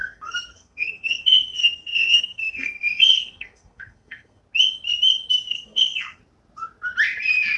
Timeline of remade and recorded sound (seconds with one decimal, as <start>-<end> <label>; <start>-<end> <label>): 0.0-4.4 remade; 4.4-5.5 recorded; 5.5-6.2 remade; 6.2-7.6 recorded